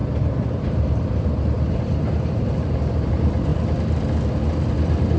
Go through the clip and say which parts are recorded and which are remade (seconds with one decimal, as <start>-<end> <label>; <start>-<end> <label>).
0.0-3.5 remade; 3.5-5.2 recorded